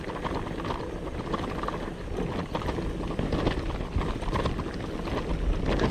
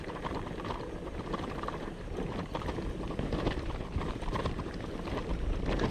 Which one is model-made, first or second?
second